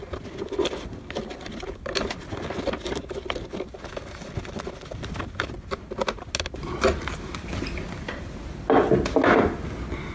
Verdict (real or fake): real